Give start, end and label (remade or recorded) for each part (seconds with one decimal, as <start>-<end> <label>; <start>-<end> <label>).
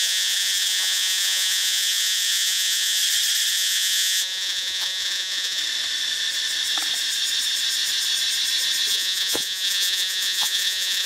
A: 0.0-3.0 remade; 3.0-3.5 recorded; 3.5-5.6 remade; 5.6-8.9 recorded; 8.9-11.1 remade